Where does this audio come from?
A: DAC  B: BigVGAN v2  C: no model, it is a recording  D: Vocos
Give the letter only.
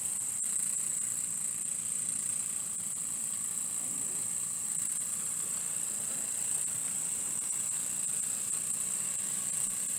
B